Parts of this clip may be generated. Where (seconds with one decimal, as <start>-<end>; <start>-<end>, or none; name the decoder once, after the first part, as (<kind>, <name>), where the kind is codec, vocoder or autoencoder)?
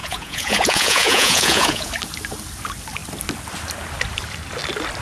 0.0-1.9 (vocoder, Vocos)